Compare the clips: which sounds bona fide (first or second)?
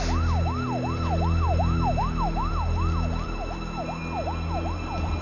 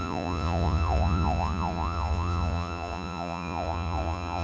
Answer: first